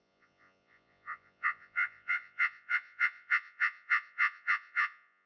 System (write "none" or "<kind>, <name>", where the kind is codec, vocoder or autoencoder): vocoder, Vocos